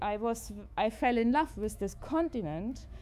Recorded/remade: remade